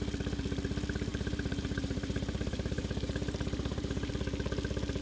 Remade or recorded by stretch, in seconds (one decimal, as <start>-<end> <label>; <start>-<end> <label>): 0.0-1.1 recorded; 1.1-4.1 remade; 4.1-5.0 recorded